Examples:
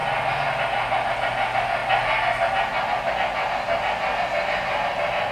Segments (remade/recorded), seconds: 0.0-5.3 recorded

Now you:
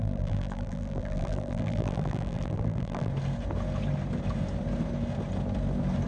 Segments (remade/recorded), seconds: 0.0-3.1 remade; 3.1-6.1 recorded

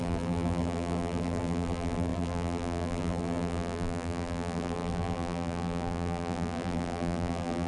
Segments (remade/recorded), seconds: 0.0-7.7 remade

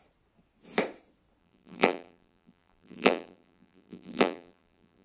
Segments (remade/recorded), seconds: 0.0-1.4 recorded; 1.4-5.0 remade

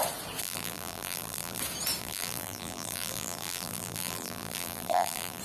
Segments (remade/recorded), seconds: 0.0-0.4 recorded; 0.4-1.6 remade; 1.6-2.0 recorded; 2.0-5.4 remade

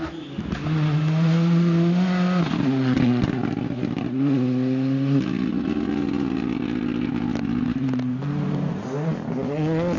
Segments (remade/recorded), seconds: 0.0-10.0 recorded

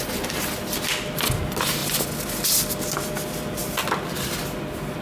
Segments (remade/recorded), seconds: 0.0-5.0 recorded

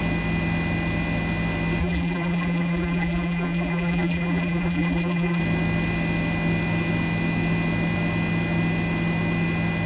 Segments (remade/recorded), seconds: 0.0-1.8 recorded; 1.8-5.4 remade; 5.4-9.9 recorded